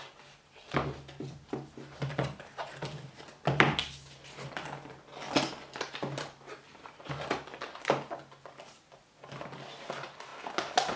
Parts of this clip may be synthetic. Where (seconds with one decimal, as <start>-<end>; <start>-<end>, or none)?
none

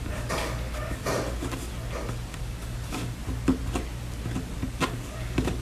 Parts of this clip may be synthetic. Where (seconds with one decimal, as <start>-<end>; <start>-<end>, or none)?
0.0-1.0; 2.4-3.2; 4.6-5.6